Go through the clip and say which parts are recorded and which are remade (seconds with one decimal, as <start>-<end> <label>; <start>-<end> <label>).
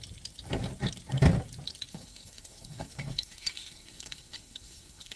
0.0-1.9 recorded; 1.9-5.2 remade